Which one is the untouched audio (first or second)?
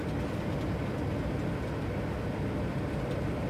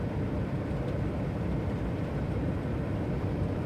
first